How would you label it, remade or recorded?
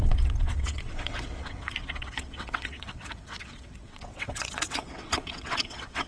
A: remade